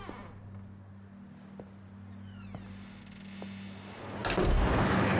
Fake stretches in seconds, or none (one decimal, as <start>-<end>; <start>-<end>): none

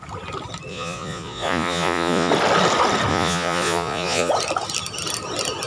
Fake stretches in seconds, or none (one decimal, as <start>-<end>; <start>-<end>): 0.7-2.3; 3.1-4.3

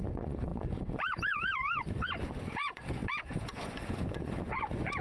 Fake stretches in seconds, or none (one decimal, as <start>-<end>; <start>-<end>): 0.0-5.0